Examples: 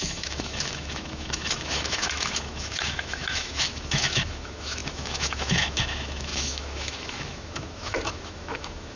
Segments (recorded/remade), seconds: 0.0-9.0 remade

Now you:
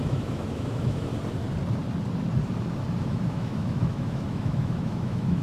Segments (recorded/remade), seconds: 0.0-1.1 remade; 1.1-3.0 recorded; 3.0-5.4 remade

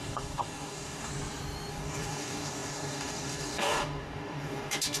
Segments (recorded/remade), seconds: 0.0-1.1 remade; 1.1-1.7 recorded; 1.7-5.0 remade

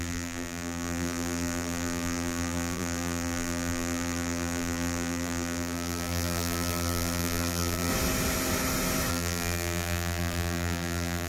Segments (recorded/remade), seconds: 0.0-7.9 remade; 7.9-9.1 recorded; 9.1-11.3 remade

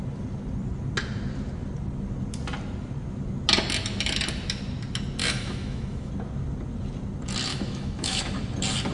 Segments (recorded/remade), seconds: 0.0-5.2 recorded; 5.2-6.1 remade; 6.1-7.5 recorded; 7.5-8.2 remade; 8.2-8.9 recorded

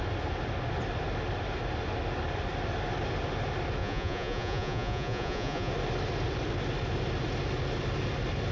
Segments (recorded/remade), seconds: 0.0-3.8 recorded; 3.8-5.7 remade; 5.7-8.5 recorded

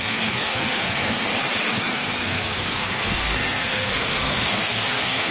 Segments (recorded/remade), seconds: 0.0-1.3 remade; 1.3-1.8 recorded; 1.8-5.3 remade